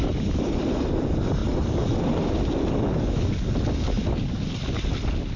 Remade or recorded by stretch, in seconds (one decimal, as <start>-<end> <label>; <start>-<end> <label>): 0.0-1.4 recorded; 1.4-2.4 remade; 2.4-5.4 recorded